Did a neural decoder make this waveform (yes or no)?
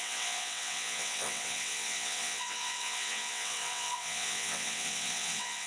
yes